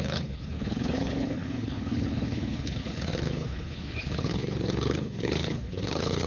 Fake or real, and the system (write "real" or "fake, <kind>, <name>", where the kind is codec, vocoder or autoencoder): fake, codec, HILCodec